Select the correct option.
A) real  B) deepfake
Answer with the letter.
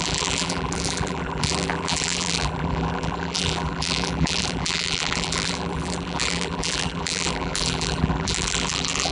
B